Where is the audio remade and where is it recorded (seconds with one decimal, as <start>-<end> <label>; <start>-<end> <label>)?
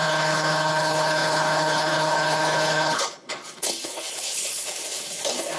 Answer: 0.0-5.6 remade